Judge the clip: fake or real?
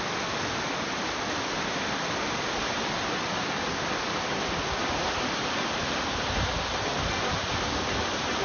real